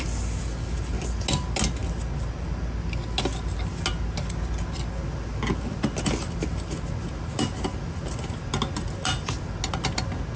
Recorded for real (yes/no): yes